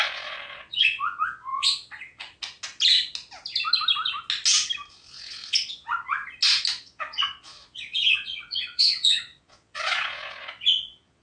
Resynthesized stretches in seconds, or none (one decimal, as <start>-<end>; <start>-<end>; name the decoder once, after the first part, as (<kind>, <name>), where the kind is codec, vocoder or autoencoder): 0.0-2.2 (vocoder, Vocos); 4.9-6.2; 6.8-11.2